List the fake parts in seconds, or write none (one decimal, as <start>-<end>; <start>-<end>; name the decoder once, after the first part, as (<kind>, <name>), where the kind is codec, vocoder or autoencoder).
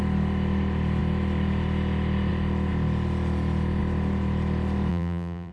4.9-5.5 (vocoder, BigVGAN v2)